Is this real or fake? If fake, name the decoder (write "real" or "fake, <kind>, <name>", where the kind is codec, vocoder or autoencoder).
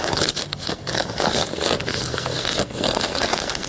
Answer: fake, codec, SNAC